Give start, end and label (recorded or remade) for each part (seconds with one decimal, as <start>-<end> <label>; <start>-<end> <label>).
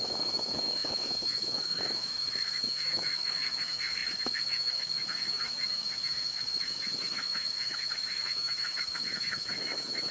0.0-10.1 remade